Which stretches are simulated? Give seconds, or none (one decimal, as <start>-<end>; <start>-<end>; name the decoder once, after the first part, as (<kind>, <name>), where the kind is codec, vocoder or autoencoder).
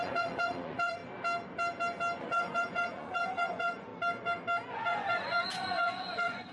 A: 0.0-1.0 (vocoder, Vocos); 2.2-3.9; 4.7-6.5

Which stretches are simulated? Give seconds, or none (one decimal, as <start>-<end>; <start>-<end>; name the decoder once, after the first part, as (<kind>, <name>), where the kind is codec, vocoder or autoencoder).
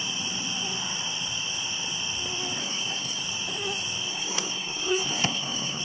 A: 2.6-3.2 (codec, SNAC); 4.1-5.8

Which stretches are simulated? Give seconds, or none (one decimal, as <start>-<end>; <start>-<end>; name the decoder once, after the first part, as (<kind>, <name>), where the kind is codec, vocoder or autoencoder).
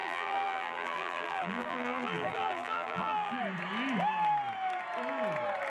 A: 0.0-3.4 (vocoder, BigVGAN v2)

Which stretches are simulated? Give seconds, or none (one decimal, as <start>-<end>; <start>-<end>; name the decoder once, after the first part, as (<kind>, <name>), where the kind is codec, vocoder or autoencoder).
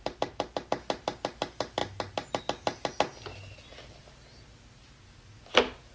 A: none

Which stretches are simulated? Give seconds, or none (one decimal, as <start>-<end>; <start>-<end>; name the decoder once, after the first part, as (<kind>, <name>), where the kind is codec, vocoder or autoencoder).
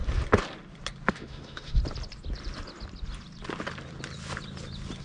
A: 1.1-1.8 (autoencoder, DAC-VAE)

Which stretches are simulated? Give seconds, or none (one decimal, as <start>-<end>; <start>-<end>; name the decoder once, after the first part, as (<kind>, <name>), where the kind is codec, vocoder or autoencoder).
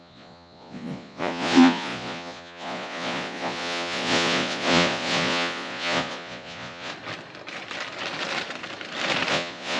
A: 0.0-6.9 (vocoder, Vocos); 9.3-9.8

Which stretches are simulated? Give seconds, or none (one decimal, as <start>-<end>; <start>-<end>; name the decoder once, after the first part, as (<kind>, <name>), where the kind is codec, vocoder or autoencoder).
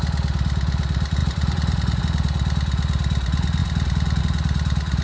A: 1.2-2.0 (vocoder, BigVGAN v2)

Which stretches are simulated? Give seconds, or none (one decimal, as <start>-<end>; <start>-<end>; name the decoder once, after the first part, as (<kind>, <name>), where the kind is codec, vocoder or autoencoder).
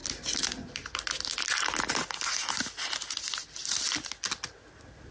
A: none